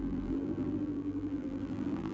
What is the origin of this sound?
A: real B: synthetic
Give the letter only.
B